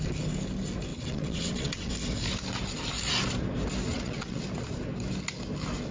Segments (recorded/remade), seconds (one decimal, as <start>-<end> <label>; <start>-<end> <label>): 0.0-0.9 recorded; 0.9-1.9 remade; 1.9-3.9 recorded; 3.9-4.4 remade; 4.4-5.9 recorded